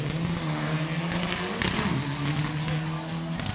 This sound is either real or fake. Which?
real